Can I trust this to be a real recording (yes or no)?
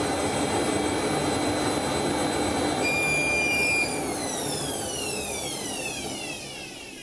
yes